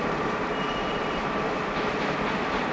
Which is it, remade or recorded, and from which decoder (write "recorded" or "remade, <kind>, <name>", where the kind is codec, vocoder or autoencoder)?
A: remade, vocoder, BigVGAN v2